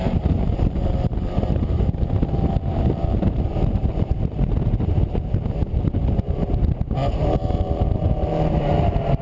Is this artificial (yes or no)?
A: yes